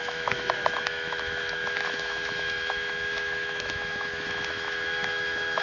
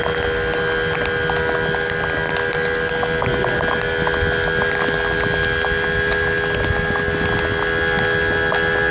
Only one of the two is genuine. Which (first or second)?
second